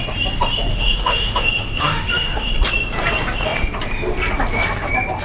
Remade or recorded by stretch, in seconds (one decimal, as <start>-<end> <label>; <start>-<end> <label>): 0.0-0.7 recorded; 0.7-2.5 remade; 2.5-5.2 recorded